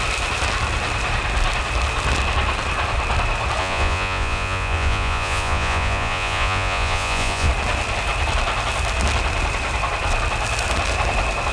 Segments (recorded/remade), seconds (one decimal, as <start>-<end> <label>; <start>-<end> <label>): 0.0-3.6 recorded; 3.6-7.5 remade; 7.5-11.5 recorded